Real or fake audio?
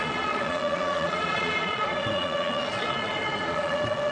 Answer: fake